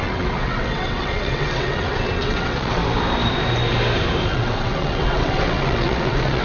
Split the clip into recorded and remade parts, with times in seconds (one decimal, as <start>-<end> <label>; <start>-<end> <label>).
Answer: 0.0-2.8 remade; 2.8-4.3 recorded; 4.3-6.4 remade